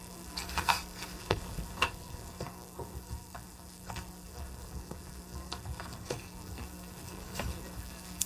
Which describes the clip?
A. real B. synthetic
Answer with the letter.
B